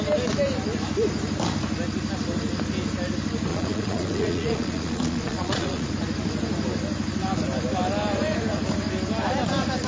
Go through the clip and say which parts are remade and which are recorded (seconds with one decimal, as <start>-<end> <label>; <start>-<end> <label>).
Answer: 0.0-3.5 recorded; 3.5-5.9 remade; 5.9-9.9 recorded